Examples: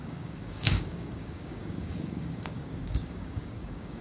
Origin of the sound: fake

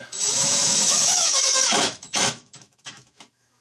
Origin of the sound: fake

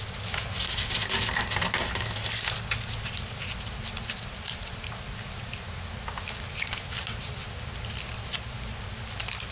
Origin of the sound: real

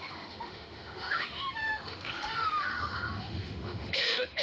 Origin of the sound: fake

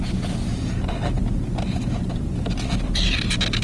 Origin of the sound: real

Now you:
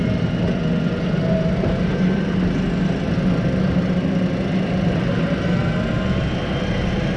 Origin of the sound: real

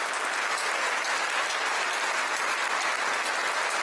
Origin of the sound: real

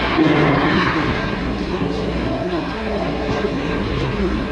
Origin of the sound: fake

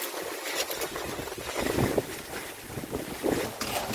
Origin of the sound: real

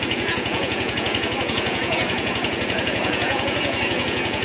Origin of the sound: fake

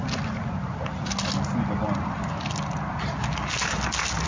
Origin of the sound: real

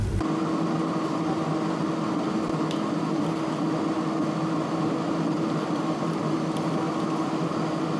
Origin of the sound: real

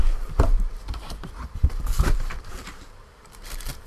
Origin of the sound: fake